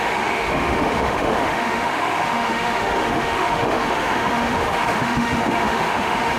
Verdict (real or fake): fake